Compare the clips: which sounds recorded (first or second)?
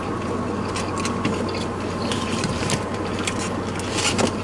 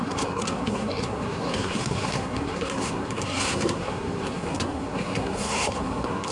first